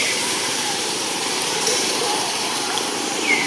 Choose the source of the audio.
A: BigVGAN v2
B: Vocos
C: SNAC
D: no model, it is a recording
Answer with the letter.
A